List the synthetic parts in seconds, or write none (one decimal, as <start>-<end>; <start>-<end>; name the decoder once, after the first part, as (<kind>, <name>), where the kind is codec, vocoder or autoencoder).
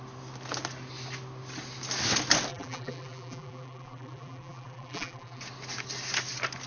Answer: 2.5-5.4 (vocoder, BigVGAN v2)